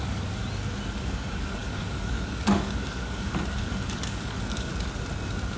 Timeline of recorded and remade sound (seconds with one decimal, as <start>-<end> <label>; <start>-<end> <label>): 0.0-0.4 remade; 0.4-1.0 recorded; 1.0-4.7 remade; 4.7-5.6 recorded